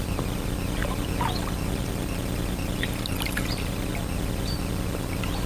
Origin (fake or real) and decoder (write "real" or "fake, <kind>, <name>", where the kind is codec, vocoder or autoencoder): real